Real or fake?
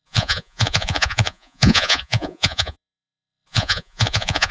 fake